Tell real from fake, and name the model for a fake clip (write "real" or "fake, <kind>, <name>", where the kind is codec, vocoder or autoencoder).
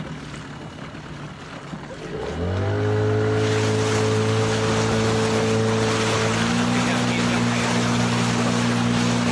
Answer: real